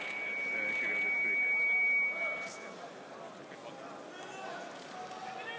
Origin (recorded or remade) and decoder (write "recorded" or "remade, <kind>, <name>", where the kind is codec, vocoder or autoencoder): recorded